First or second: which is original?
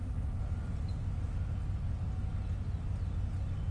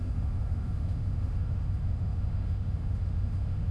first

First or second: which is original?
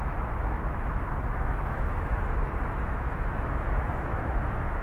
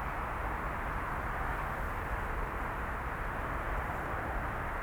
second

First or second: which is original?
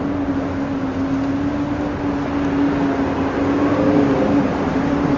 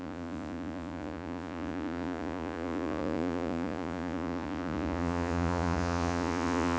first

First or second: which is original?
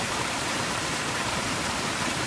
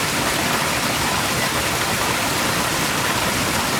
second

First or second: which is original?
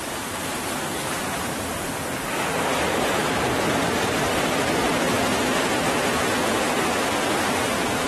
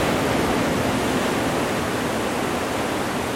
second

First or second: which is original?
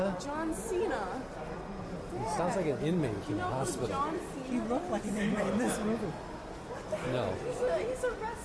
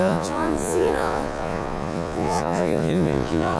first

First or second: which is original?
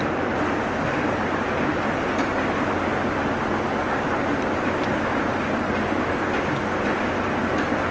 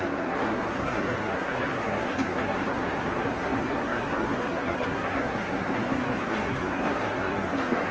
first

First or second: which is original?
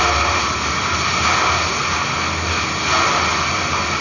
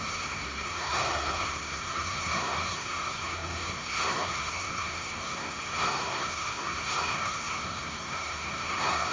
first